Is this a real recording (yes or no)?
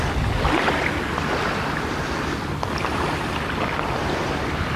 yes